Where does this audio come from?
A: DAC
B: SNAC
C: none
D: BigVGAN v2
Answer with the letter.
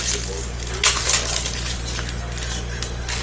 C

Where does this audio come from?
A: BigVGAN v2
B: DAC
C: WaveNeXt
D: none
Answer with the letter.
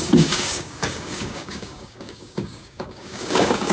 B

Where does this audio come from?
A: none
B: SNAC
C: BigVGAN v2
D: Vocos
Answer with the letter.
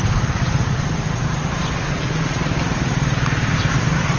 C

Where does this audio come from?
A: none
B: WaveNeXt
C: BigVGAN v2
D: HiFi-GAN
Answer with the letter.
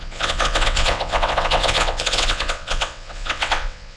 B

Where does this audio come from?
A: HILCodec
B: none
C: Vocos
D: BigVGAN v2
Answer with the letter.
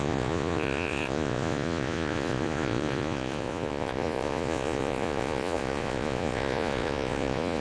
C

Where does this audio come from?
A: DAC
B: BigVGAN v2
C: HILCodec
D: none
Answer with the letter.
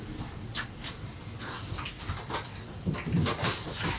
D